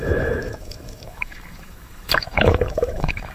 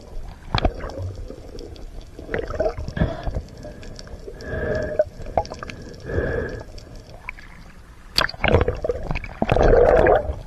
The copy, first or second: first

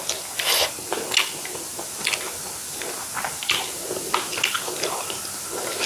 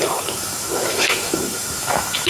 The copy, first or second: second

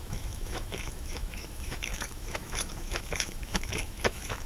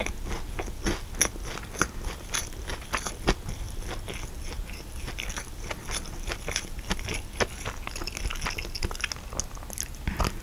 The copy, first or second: first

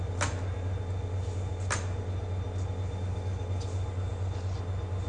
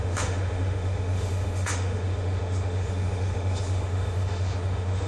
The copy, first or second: second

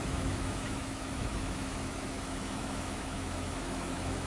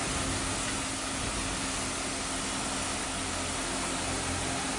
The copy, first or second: first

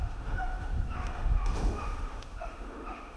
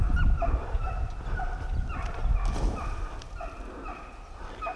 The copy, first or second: first